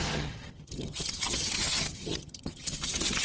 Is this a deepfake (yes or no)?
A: yes